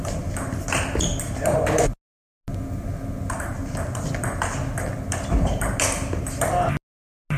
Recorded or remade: recorded